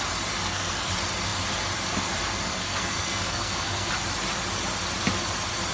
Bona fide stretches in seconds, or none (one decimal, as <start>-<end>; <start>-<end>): 0.0-0.4; 0.9-2.6; 3.9-5.7